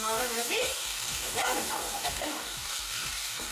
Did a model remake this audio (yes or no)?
yes